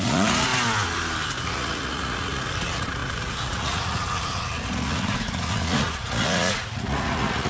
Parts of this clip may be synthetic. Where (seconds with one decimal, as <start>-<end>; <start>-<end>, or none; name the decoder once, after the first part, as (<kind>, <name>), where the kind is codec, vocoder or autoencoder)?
0.0-0.5 (vocoder, Vocos); 1.4-7.5

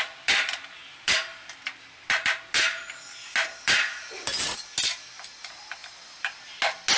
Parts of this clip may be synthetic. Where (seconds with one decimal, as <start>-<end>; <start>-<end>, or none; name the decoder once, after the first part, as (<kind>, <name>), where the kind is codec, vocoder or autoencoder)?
none